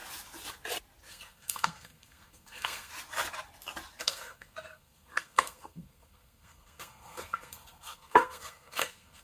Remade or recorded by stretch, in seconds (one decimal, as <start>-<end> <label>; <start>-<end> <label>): 0.0-1.1 recorded; 1.1-2.9 remade; 2.9-4.0 recorded; 4.0-9.2 remade